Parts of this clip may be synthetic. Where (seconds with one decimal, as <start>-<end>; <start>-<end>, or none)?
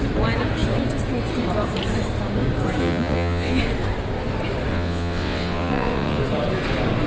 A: 2.8-3.6; 4.7-6.2